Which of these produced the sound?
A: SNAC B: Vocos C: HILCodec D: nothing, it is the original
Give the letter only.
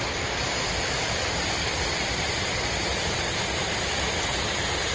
D